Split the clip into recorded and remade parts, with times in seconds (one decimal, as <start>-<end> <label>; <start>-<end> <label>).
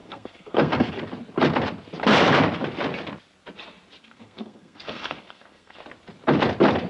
0.0-0.9 remade; 0.9-4.0 recorded; 4.0-5.8 remade; 5.8-6.9 recorded